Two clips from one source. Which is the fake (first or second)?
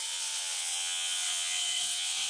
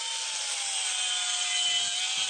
first